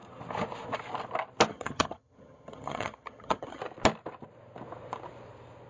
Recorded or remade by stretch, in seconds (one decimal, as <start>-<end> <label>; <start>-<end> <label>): 0.0-1.5 recorded; 1.5-3.6 remade; 3.6-5.7 recorded